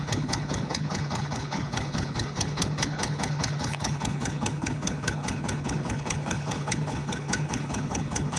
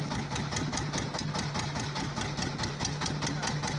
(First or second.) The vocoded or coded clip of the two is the first